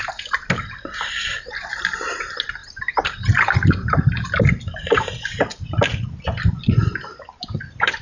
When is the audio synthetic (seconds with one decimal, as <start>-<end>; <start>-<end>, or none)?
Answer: none